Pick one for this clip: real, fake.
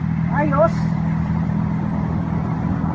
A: real